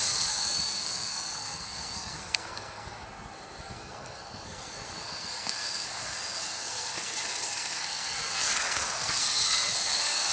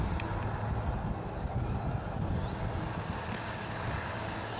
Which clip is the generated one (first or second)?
first